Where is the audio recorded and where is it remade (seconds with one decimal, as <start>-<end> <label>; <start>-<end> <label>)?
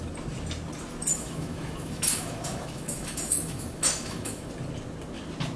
0.0-1.1 recorded; 1.1-4.5 remade; 4.5-5.6 recorded